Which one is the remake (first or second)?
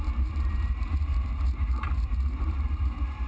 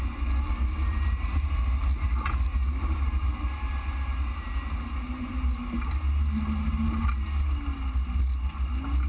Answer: first